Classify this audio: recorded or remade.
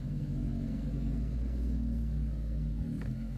remade